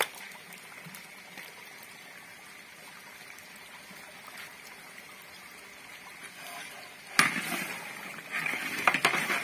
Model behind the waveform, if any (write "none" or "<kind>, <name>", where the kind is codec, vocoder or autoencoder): none